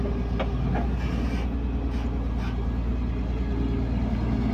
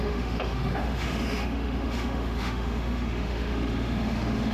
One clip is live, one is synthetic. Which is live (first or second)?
first